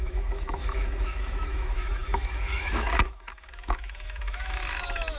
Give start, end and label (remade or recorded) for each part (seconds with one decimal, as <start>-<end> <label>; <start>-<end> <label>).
0.0-5.2 remade